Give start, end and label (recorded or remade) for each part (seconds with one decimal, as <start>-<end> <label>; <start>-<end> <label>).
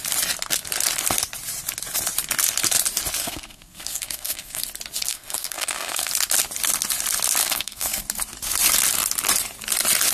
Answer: 0.0-3.2 recorded; 3.2-4.6 remade; 4.6-5.1 recorded; 5.1-6.1 remade; 6.1-7.4 recorded; 7.4-8.0 remade; 8.0-10.1 recorded